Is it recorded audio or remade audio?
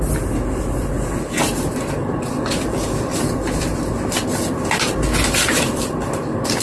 recorded